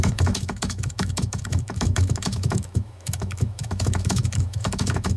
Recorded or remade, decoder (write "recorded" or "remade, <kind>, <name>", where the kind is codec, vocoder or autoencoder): remade, autoencoder, DAC-VAE